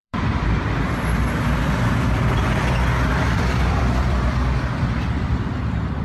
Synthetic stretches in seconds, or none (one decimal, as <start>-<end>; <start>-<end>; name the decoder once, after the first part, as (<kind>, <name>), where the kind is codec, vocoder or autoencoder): 0.0-0.6 (vocoder, BigVGAN v2); 3.1-5.5